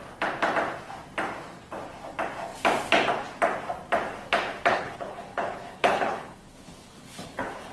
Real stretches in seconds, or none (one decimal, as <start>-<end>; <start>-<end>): 0.0-4.7